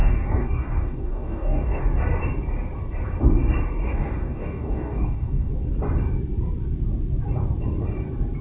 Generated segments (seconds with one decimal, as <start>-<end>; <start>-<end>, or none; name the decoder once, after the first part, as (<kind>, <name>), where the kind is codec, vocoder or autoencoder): 0.0-1.8 (codec, DAC); 3.8-5.5